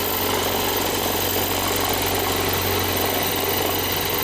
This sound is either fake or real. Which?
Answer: real